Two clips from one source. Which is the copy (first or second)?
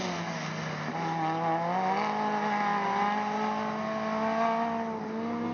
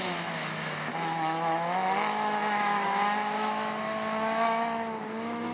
second